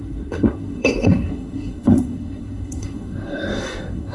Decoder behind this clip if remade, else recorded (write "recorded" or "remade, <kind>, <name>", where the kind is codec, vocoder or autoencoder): remade, codec, SNAC